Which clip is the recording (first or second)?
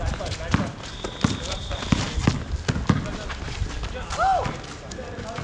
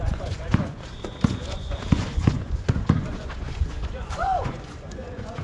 first